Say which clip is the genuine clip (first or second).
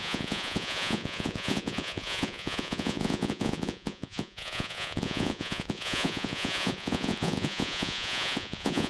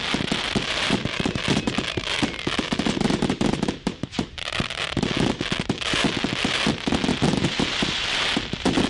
second